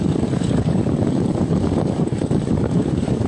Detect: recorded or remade remade